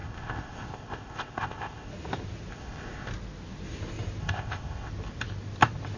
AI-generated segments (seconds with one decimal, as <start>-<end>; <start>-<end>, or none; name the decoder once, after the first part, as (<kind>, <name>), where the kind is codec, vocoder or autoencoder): 0.0-1.9 (codec, ZipCodec); 2.5-3.1; 4.2-4.9